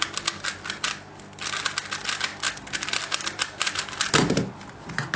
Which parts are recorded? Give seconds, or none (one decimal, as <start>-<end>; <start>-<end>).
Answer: 0.0-5.2